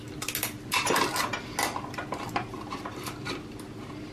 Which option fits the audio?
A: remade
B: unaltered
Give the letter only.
B